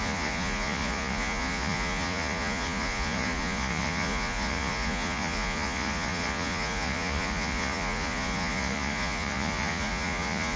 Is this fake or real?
fake